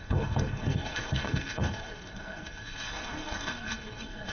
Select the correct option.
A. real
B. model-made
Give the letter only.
B